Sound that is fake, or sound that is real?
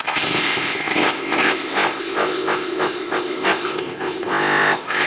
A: fake